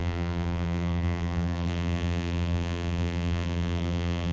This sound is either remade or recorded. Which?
remade